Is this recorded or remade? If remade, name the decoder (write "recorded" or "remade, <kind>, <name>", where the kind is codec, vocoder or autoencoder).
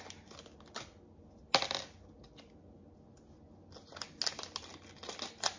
recorded